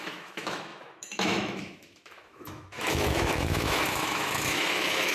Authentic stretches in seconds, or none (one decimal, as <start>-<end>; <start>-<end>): none